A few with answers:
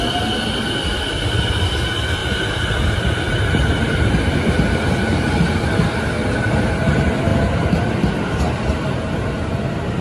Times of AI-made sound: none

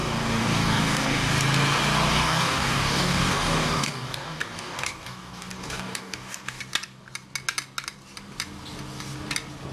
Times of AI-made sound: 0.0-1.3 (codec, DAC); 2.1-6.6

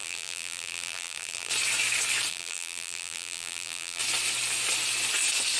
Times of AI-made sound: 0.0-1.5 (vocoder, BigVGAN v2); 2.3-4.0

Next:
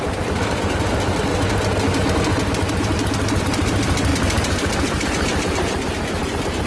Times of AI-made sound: 0.0-1.3 (vocoder, BigVGAN v2); 3.4-6.7

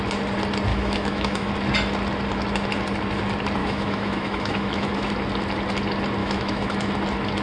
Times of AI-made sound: 0.7-1.5 (autoencoder, DAC-VAE); 3.6-5.1; 6.2-6.9

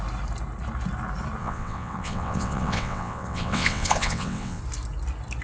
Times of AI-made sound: 1.4-4.6 (vocoder, WaveNeXt)